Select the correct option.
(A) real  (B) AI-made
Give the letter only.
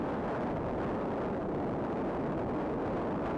A